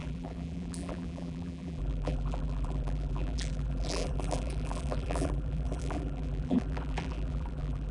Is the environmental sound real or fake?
fake